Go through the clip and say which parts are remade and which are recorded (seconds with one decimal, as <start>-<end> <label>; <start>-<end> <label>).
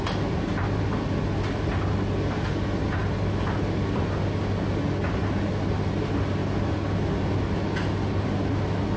0.0-9.0 recorded